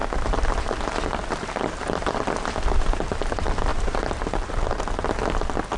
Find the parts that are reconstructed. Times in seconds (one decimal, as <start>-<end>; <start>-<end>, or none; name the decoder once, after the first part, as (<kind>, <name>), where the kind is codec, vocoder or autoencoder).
3.7-4.8 (vocoder, BigVGAN v2)